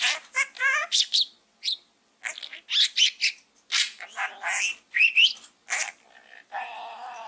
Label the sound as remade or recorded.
recorded